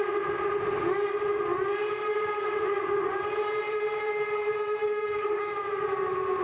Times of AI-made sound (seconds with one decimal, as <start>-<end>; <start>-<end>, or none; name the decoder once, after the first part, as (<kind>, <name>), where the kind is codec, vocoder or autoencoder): 4.8-5.4 (codec, DAC)